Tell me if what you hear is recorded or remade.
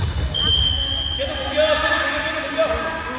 recorded